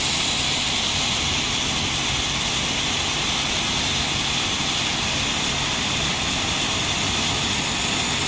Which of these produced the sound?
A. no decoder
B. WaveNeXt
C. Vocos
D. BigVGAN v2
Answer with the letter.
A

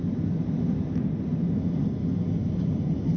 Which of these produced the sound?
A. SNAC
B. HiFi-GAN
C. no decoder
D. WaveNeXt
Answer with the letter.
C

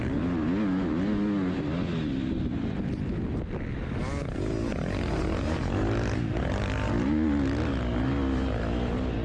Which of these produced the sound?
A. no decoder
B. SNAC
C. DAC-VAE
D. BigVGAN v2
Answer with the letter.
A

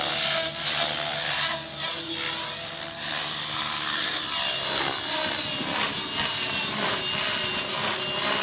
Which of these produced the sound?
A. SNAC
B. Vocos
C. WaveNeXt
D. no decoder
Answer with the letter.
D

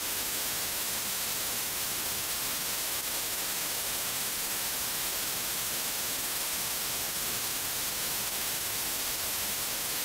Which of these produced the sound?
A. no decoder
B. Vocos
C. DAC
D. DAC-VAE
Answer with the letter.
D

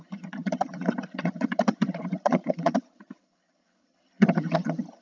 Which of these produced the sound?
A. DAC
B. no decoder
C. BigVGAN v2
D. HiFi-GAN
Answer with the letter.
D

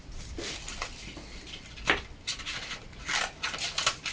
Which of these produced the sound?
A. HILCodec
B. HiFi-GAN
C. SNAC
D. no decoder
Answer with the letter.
D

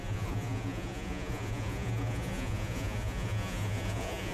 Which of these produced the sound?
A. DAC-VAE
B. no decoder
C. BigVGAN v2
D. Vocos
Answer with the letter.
D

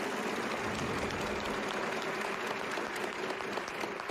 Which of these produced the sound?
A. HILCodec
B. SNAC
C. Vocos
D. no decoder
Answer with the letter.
D